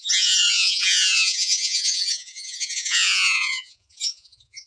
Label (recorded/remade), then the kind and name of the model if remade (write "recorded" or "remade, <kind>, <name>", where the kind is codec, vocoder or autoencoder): remade, vocoder, Vocos